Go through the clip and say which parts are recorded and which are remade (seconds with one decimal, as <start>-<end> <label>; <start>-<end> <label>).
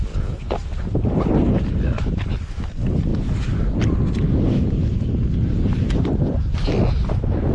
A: 0.0-0.6 recorded; 0.6-1.5 remade; 1.5-3.1 recorded; 3.1-6.5 remade; 6.5-7.5 recorded